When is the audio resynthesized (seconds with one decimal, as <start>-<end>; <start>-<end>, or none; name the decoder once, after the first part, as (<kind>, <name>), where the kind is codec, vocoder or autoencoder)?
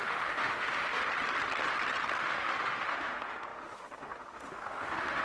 0.0-1.0 (autoencoder, DAC-VAE); 2.2-5.2